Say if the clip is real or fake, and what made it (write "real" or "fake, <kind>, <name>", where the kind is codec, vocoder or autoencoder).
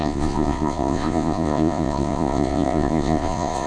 fake, vocoder, Vocos